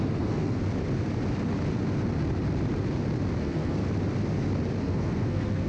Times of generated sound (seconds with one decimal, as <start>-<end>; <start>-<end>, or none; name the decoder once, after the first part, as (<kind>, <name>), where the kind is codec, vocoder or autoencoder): 0.0-0.6 (codec, SNAC); 3.4-3.8; 4.8-5.7